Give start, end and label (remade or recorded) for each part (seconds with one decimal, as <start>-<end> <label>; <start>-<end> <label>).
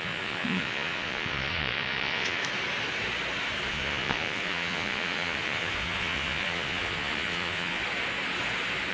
0.0-2.4 remade; 2.4-3.7 recorded; 3.7-7.8 remade; 7.8-8.9 recorded